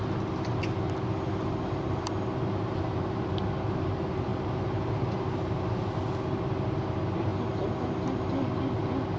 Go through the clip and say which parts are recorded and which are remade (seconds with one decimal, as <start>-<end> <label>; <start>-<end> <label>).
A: 0.0-4.3 recorded; 4.3-6.0 remade; 6.0-9.2 recorded